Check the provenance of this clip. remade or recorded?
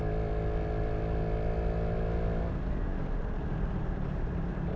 recorded